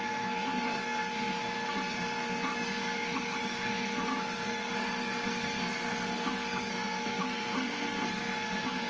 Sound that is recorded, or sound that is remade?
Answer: remade